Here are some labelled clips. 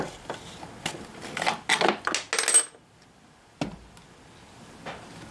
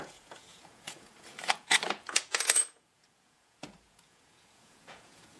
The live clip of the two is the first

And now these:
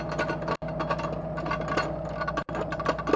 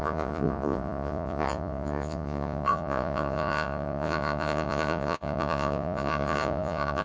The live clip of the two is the first